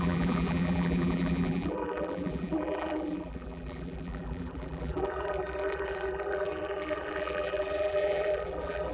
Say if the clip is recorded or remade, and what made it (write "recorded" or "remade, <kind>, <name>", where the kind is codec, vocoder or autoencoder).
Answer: remade, vocoder, BigVGAN v2